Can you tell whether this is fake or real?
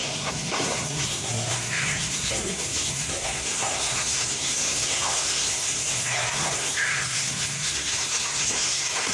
fake